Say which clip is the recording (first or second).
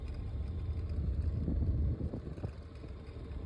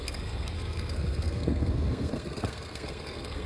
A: first